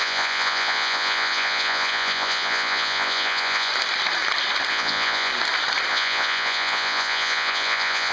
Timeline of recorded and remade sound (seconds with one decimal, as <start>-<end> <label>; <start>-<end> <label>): 0.0-3.7 remade; 3.7-4.7 recorded; 4.7-5.3 remade; 5.3-5.9 recorded; 5.9-8.1 remade